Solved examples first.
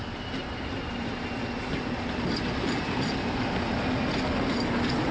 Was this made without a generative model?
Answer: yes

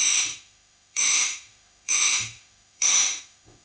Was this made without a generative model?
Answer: no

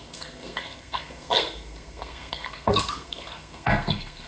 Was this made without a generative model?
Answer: no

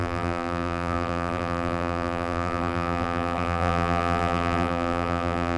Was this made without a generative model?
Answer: no